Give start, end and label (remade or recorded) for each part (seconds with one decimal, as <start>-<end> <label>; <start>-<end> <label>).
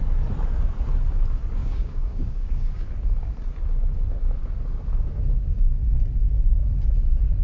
0.0-1.6 recorded; 1.6-2.9 remade; 2.9-7.4 recorded